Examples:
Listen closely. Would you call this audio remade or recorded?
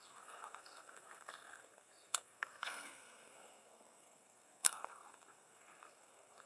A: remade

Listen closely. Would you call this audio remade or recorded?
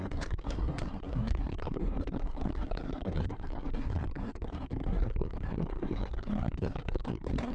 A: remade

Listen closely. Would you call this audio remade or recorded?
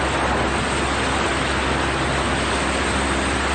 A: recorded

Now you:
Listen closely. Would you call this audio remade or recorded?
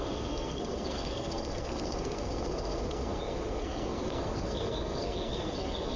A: remade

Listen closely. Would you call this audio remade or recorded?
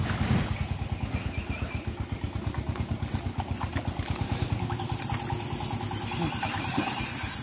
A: recorded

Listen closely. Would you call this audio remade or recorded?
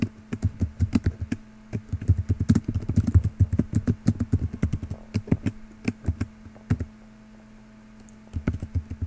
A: recorded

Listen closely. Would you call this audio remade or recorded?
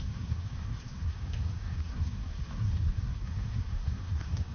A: remade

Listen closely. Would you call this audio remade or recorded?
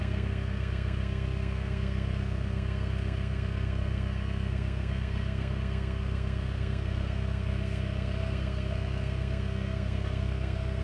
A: remade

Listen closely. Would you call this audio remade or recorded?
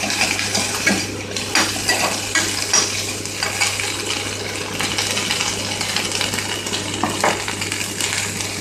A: recorded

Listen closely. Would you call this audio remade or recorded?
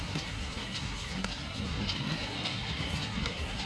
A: remade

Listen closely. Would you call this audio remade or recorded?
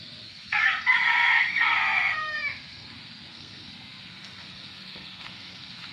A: remade